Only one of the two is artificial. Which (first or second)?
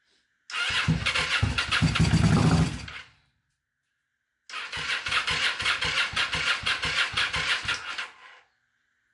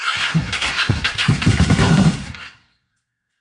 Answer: second